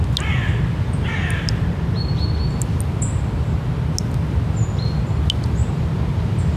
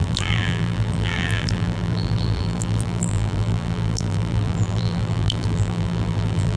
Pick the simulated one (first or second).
second